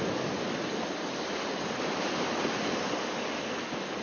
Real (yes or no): yes